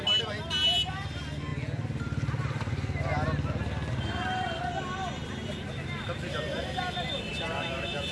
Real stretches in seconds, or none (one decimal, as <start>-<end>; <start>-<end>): 0.0-8.1